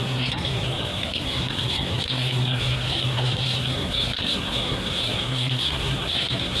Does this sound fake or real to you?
fake